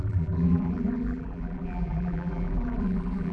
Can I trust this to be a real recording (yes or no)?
no